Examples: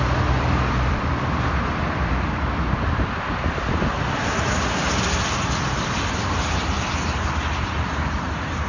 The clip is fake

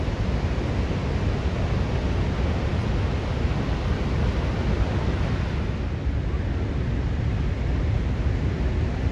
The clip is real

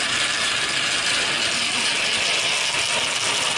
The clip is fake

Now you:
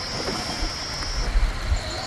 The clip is real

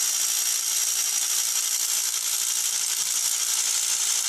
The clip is real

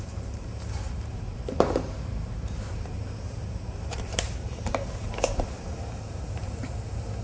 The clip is fake